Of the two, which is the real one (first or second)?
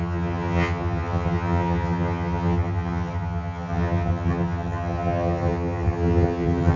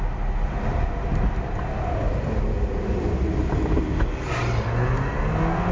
second